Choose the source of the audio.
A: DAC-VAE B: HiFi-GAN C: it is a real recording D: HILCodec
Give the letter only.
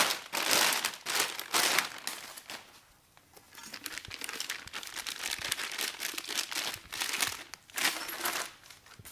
C